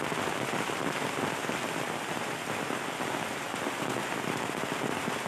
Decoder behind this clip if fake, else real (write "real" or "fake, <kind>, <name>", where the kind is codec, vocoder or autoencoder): real